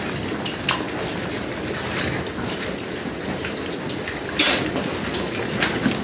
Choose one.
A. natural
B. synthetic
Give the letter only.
A